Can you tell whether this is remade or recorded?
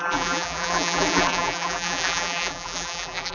remade